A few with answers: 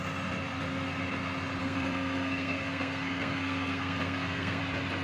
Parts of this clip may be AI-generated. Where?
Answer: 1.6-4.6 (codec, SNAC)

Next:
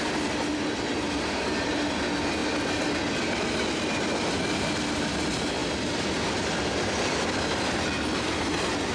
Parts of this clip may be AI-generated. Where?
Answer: none

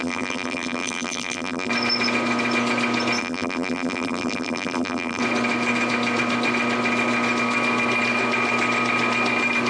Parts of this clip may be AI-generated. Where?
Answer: 0.0-1.7 (vocoder, BigVGAN v2); 3.2-5.2

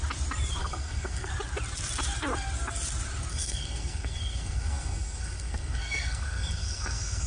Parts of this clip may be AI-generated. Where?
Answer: 0.6-1.3 (codec, SNAC); 3.3-7.3

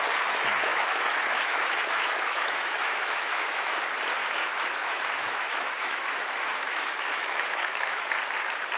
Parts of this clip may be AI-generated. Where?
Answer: 0.7-3.8 (autoencoder, DAC-VAE); 4.2-8.1

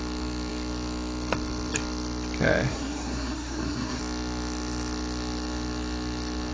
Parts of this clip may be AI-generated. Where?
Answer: 2.7-4.0 (codec, SNAC)

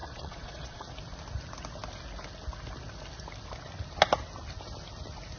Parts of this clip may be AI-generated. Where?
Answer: 0.0-0.9 (vocoder, Vocos)

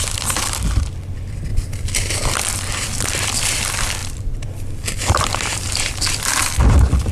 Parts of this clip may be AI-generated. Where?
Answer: 0.0-7.1 (vocoder, BigVGAN v2)